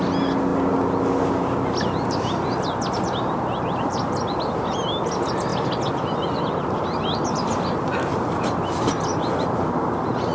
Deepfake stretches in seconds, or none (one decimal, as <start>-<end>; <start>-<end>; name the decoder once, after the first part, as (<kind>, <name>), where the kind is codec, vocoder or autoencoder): none